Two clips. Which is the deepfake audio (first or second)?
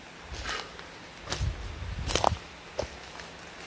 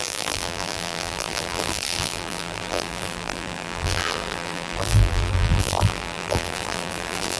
second